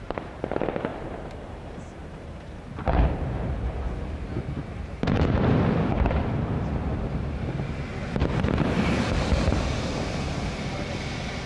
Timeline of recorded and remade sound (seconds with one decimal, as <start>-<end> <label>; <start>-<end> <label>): 0.0-0.9 recorded; 0.9-5.6 remade; 5.6-8.2 recorded; 8.2-10.5 remade; 10.5-11.5 recorded